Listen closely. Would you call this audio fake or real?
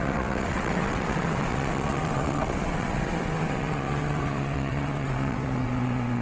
fake